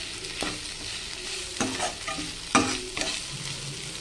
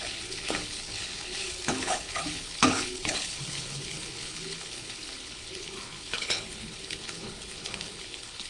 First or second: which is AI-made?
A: second